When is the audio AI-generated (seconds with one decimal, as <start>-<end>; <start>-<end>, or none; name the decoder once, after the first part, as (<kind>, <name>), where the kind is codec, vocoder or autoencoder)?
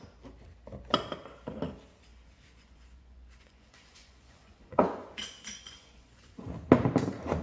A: 2.1-6.5 (vocoder, Vocos)